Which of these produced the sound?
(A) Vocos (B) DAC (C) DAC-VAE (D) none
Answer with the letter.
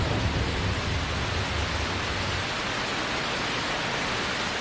D